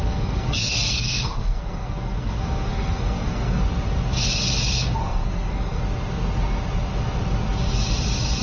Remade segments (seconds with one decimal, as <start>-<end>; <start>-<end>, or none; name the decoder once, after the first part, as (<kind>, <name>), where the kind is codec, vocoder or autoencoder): 0.0-3.6 (codec, SNAC); 5.0-5.8